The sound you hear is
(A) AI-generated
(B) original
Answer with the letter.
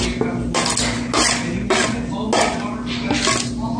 B